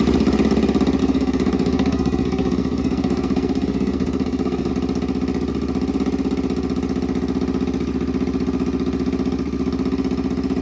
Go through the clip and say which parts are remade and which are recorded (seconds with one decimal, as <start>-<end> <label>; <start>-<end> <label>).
0.0-1.0 recorded; 1.0-4.7 remade; 4.7-10.6 recorded